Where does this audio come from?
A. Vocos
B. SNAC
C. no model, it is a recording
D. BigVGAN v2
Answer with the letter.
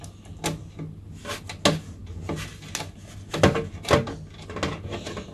C